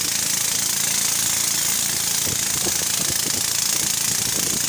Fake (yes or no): no